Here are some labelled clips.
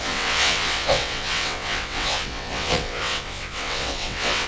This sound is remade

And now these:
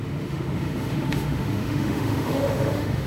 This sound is remade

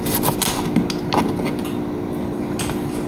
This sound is recorded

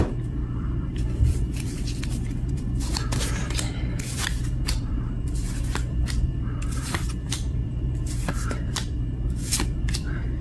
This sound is remade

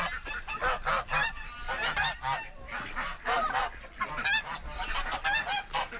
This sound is recorded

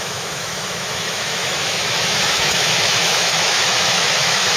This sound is remade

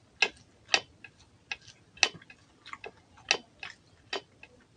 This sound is recorded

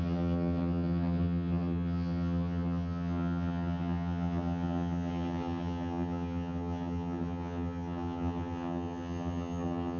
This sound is remade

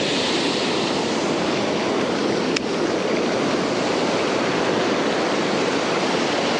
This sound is recorded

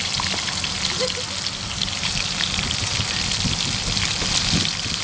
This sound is recorded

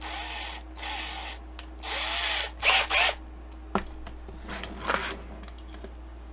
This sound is recorded